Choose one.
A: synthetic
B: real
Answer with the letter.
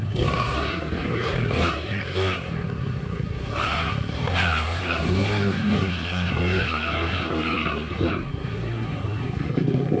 A